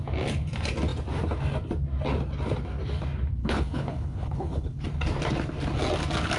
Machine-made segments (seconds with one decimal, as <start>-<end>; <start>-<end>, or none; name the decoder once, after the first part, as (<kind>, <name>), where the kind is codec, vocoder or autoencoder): 3.4-4.8 (codec, HILCodec)